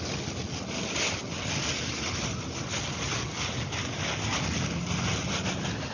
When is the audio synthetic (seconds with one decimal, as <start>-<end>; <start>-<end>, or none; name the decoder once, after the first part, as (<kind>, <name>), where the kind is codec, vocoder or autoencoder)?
none